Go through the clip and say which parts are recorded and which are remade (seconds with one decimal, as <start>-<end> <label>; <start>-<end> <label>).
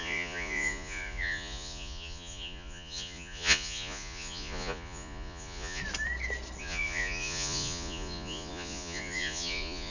0.0-5.8 remade; 5.8-6.6 recorded; 6.6-9.9 remade